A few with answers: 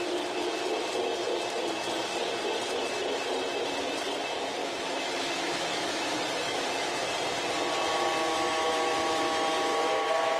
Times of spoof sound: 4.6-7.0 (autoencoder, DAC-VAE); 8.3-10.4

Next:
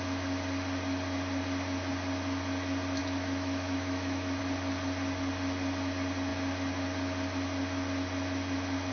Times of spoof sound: 3.0-4.4 (autoencoder, DAC-VAE)

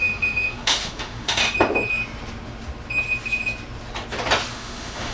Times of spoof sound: 0.0-1.4 (autoencoder, DAC-VAE); 4.5-5.1

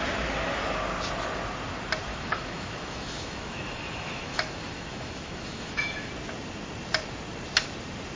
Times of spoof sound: 2.1-6.1 (autoencoder, DAC-VAE)

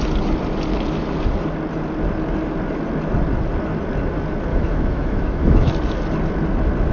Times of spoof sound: 4.5-5.7 (autoencoder, DAC-VAE)

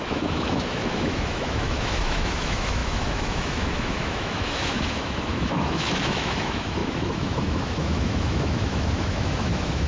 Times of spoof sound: 0.0-9.9 (autoencoder, DAC-VAE)